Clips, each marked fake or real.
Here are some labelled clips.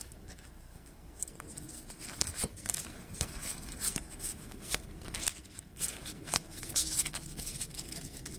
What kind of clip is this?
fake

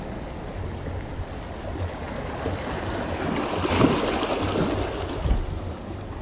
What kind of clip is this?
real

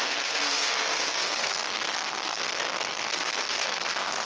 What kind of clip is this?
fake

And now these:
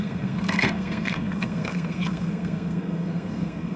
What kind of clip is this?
fake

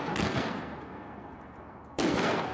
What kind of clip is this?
fake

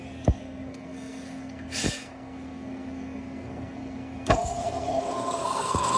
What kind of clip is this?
fake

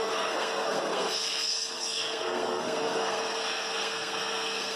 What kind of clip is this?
fake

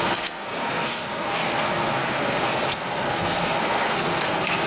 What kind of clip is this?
fake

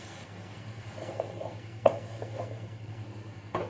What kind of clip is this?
fake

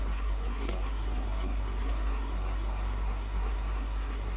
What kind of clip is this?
fake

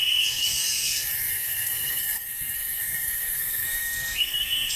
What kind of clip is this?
fake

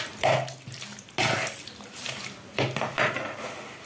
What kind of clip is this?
real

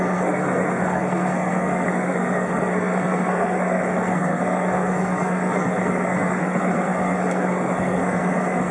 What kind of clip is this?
fake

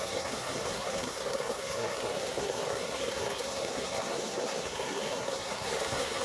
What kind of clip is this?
fake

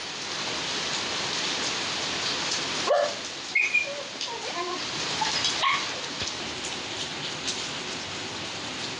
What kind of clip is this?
real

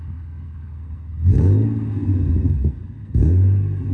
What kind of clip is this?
fake